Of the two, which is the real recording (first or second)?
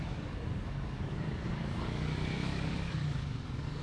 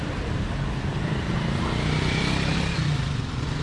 second